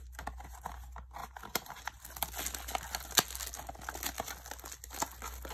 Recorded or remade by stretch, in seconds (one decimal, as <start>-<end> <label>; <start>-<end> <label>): 0.0-5.5 recorded